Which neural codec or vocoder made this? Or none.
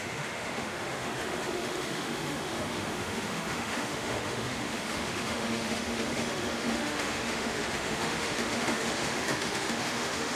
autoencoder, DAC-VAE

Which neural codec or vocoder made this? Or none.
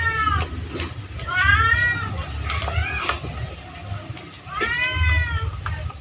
none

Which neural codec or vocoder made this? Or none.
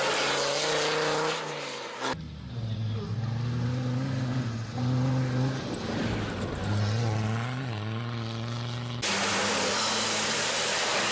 none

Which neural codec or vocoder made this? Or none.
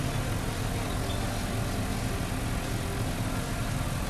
none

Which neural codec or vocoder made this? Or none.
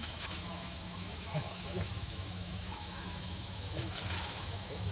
autoencoder, DAC-VAE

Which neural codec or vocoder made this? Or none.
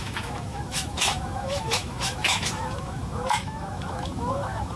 autoencoder, DAC-VAE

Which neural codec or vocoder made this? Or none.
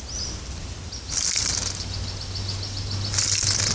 none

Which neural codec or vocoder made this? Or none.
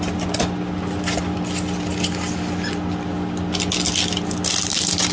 none